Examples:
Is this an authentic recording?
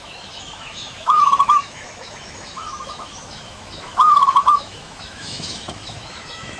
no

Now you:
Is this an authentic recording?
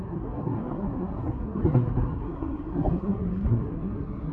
no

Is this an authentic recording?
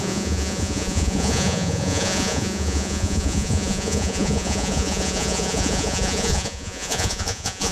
no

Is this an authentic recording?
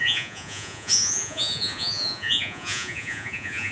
no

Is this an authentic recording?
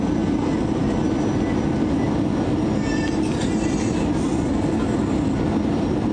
yes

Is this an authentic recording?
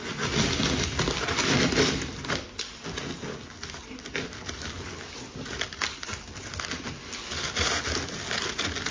yes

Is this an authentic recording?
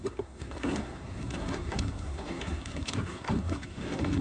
no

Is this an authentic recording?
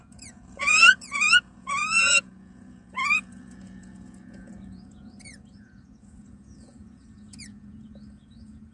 no